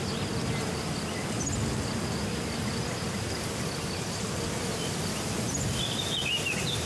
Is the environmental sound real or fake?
real